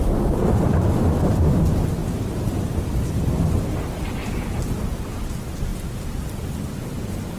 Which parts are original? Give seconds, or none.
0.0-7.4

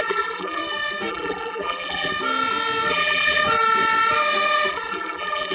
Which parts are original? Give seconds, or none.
0.6-1.1; 2.1-2.9; 3.4-4.7

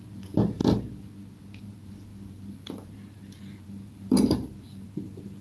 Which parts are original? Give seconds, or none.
0.6-1.6

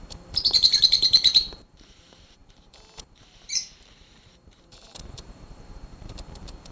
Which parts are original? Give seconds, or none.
none